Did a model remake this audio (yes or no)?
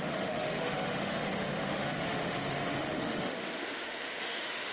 yes